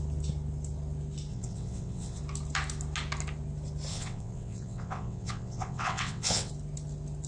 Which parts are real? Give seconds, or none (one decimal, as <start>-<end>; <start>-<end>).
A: 0.0-1.3; 2.2-3.9; 6.5-7.3